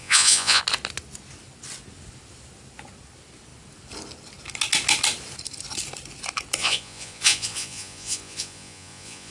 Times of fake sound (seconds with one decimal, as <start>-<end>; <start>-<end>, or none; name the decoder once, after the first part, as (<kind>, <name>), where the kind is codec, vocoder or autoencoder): 0.0-0.6 (vocoder, Vocos); 6.6-9.3